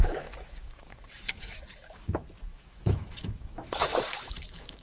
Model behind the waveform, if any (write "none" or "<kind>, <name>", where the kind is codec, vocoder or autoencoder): autoencoder, DAC-VAE